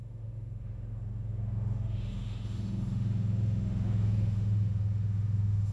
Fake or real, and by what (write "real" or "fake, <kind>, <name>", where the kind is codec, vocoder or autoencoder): fake, autoencoder, DAC-VAE